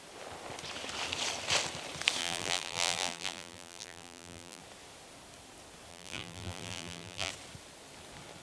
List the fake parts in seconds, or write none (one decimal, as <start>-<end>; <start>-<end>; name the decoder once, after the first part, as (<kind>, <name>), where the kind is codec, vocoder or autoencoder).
2.2-4.6 (vocoder, BigVGAN v2); 5.9-7.3